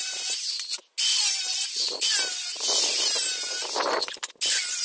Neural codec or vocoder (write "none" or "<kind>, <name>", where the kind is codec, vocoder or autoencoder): none